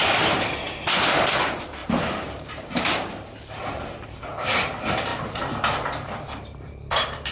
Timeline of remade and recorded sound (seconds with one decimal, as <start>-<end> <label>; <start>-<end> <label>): 0.0-1.8 recorded; 1.8-3.4 remade; 3.4-5.1 recorded; 5.1-7.3 remade